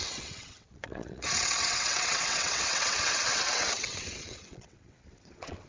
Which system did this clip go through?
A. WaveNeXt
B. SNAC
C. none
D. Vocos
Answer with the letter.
A